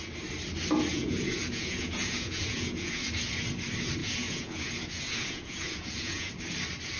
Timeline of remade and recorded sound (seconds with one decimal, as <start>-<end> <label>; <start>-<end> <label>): 0.0-0.9 recorded; 0.9-3.0 remade; 3.0-4.0 recorded; 4.0-6.3 remade; 6.3-7.0 recorded